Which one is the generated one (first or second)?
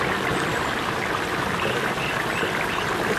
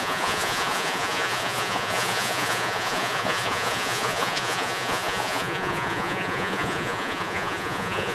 second